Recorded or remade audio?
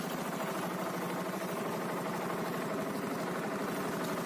recorded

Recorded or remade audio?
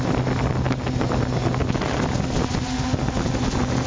recorded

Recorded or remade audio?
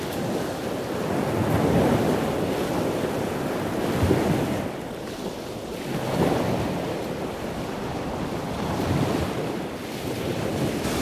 recorded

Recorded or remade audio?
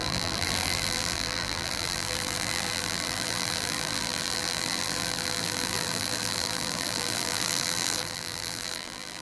remade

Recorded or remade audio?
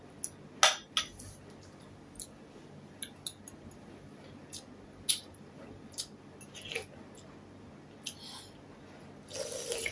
recorded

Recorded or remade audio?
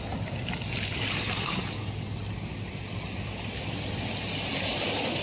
recorded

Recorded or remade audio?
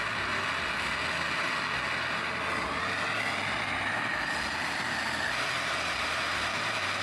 recorded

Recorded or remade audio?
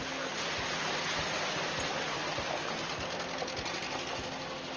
recorded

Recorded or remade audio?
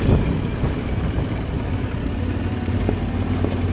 recorded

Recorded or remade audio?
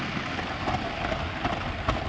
recorded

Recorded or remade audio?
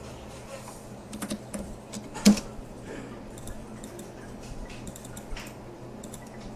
remade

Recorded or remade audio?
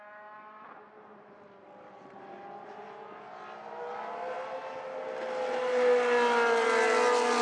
recorded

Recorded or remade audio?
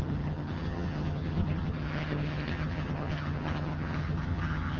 remade